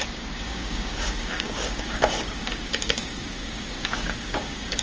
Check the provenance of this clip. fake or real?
fake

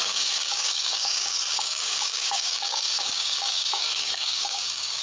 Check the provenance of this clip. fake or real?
fake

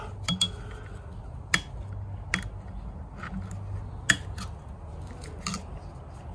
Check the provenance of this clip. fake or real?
real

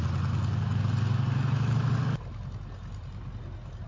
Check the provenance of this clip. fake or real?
real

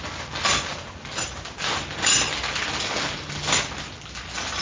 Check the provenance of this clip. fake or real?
real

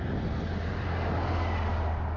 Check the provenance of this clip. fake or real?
real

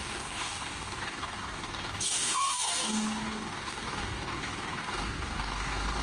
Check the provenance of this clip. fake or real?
fake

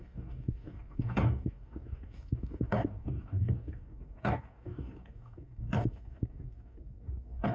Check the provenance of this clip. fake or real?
fake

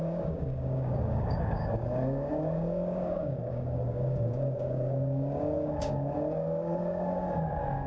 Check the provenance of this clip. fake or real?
fake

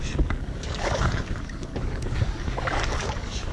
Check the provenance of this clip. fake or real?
fake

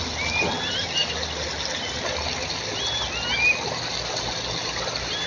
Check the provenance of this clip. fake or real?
real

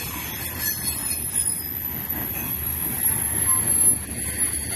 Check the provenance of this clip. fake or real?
real